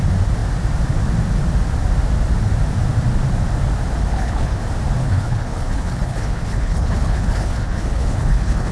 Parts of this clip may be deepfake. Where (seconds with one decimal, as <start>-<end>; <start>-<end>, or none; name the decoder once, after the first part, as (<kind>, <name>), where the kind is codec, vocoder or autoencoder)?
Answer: 4.1-4.6 (codec, HILCodec); 5.0-8.7